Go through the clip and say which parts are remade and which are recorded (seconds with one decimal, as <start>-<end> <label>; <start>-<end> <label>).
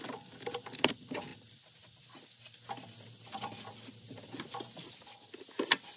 0.0-6.0 recorded